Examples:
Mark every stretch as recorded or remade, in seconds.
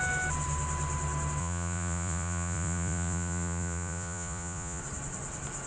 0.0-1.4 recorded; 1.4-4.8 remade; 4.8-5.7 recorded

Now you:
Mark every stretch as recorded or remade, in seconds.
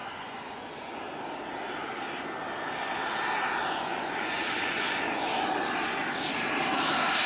0.0-1.0 remade; 1.0-3.6 recorded; 3.6-5.5 remade; 5.5-7.3 recorded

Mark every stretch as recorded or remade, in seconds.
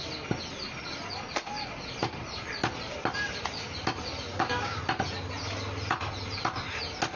0.0-4.3 recorded; 4.3-4.8 remade; 4.8-7.2 recorded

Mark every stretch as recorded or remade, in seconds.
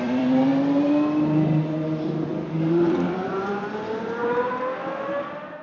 0.0-0.5 remade; 0.5-2.1 recorded; 2.1-4.2 remade; 4.2-4.8 recorded; 4.8-5.6 remade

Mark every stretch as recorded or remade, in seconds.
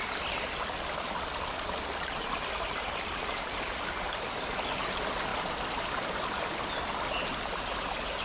0.0-5.3 recorded; 5.3-5.8 remade; 5.8-8.2 recorded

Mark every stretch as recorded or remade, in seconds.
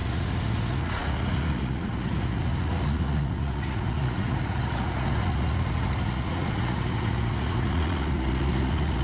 0.0-9.0 remade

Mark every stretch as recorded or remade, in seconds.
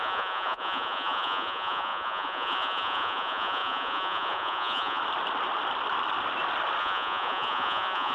0.0-5.0 remade; 5.0-6.8 recorded; 6.8-8.1 remade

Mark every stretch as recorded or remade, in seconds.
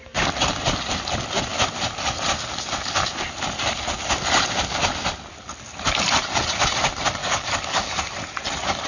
0.0-7.2 recorded; 7.2-8.0 remade; 8.0-8.9 recorded